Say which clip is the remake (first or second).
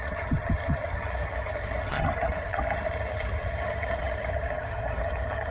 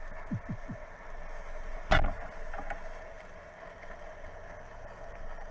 first